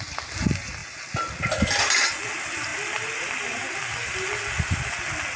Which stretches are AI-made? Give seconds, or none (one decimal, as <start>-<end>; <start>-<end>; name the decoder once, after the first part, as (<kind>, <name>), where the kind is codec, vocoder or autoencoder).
none